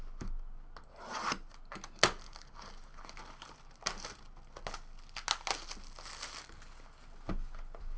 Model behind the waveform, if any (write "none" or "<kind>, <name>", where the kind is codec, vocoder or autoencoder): none